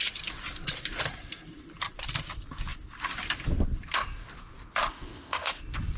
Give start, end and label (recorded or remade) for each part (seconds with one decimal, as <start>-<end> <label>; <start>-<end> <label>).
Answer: 0.0-4.9 recorded; 4.9-5.6 remade; 5.6-6.0 recorded